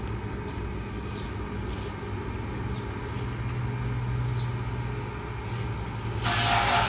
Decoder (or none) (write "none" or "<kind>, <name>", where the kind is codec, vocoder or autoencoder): none